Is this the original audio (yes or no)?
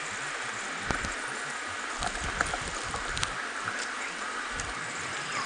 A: yes